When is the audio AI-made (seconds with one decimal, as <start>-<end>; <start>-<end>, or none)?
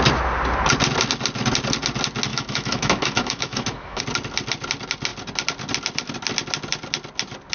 2.3-4.0